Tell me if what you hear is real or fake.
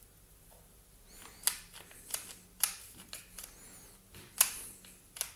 real